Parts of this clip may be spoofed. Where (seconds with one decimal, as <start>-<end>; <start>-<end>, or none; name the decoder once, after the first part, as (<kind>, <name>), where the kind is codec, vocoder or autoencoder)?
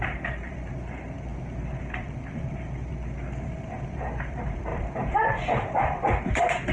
0.0-1.3 (vocoder, BigVGAN v2); 2.0-6.7